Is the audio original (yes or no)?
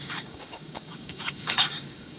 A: no